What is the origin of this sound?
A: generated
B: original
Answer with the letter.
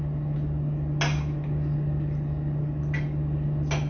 B